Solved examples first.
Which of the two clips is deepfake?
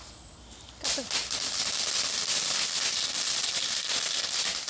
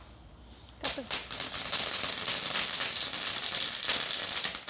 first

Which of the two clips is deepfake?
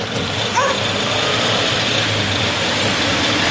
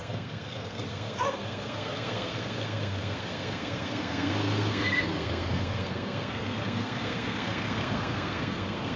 second